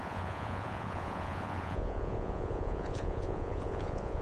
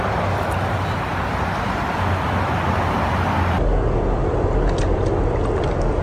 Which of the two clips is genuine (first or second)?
second